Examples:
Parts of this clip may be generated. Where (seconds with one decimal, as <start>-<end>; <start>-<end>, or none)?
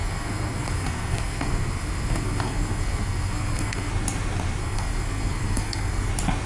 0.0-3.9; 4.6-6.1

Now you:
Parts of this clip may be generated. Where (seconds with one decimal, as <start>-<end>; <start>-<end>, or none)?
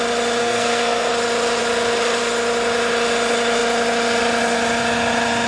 0.4-1.1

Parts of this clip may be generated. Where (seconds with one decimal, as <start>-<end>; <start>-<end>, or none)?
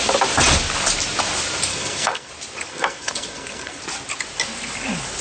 1.7-2.3; 2.7-3.8